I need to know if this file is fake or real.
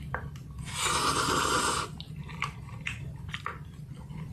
real